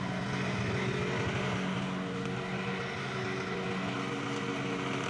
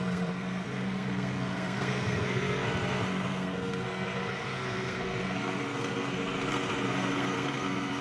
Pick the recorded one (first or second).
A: first